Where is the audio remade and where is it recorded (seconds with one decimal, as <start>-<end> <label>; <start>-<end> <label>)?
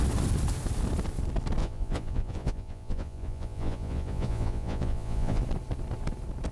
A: 0.0-1.6 recorded; 1.6-5.4 remade; 5.4-6.5 recorded